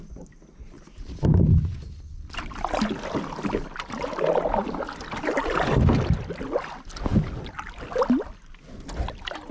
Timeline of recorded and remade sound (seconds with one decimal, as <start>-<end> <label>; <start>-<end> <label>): 0.0-9.5 recorded